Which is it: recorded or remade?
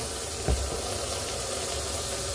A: recorded